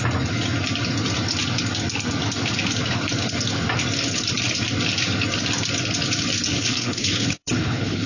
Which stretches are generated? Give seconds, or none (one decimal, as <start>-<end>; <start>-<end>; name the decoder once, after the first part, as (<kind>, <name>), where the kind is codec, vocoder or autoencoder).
6.5-8.1 (codec, HILCodec)

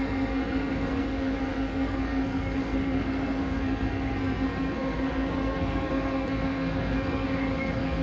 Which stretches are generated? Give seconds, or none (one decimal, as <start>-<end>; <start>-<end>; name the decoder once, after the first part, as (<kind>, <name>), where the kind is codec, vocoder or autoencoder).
0.0-8.0 (codec, SNAC)

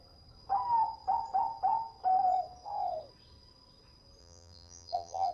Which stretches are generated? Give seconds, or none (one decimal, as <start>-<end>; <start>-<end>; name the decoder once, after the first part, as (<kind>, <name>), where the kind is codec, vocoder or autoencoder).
4.2-5.3 (vocoder, BigVGAN v2)